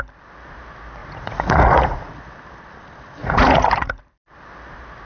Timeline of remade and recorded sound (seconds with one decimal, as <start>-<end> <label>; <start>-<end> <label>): 0.0-1.0 recorded; 1.0-2.1 remade; 2.1-3.2 recorded; 3.2-4.0 remade; 4.0-5.1 recorded